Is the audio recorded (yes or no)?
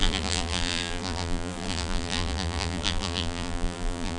no